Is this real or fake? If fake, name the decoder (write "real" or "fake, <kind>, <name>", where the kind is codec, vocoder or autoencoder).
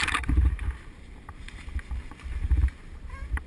fake, vocoder, BigVGAN v2